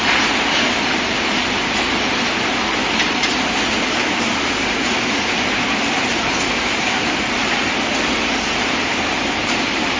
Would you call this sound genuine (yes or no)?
no